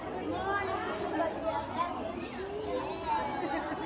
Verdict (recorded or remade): recorded